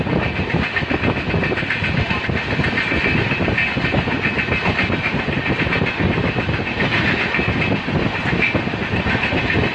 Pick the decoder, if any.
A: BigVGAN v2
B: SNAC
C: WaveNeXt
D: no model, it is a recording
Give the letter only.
D